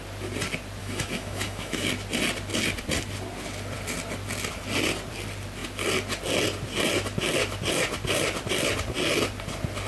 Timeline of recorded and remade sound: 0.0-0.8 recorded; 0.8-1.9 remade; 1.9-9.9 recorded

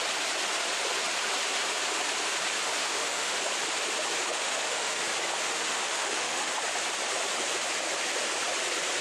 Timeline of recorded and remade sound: 0.0-2.8 recorded; 2.8-3.4 remade; 3.4-4.3 recorded; 4.3-5.0 remade; 5.0-5.4 recorded; 5.4-6.5 remade; 6.5-9.0 recorded

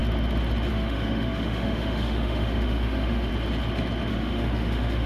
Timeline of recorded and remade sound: 0.0-0.7 recorded; 0.7-3.3 remade; 3.3-4.1 recorded; 4.1-5.1 remade

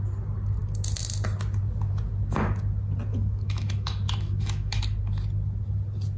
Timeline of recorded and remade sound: 0.0-3.1 recorded; 3.1-4.8 remade; 4.8-6.2 recorded

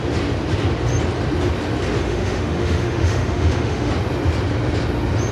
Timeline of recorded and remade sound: 0.0-2.0 recorded; 2.0-3.9 remade; 3.9-5.3 recorded